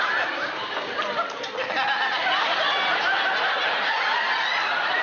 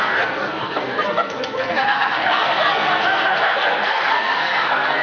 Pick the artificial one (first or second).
second